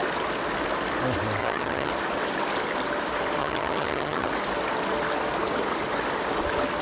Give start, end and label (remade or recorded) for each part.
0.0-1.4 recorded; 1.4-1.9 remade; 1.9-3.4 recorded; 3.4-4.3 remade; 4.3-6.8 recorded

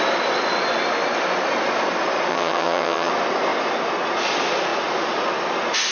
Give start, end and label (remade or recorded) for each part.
0.0-2.3 recorded; 2.3-3.1 remade; 3.1-5.9 recorded

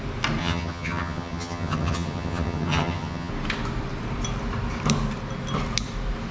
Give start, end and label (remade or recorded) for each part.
0.0-0.4 recorded; 0.4-3.3 remade; 3.3-6.3 recorded